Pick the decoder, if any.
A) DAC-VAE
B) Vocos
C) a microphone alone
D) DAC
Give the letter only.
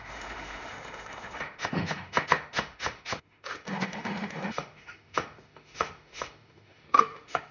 A